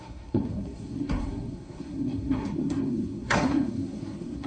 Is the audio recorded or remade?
remade